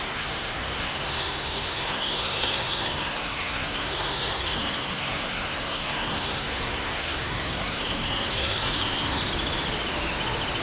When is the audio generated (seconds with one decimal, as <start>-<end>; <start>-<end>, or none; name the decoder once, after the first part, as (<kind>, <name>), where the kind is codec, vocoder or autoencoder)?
0.0-9.2 (codec, SNAC)